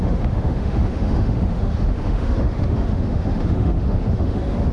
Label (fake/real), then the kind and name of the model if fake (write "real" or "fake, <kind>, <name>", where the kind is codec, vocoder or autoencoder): fake, autoencoder, DAC-VAE